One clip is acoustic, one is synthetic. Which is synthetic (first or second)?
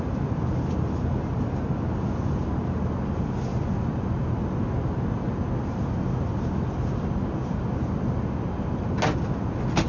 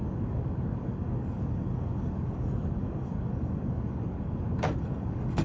second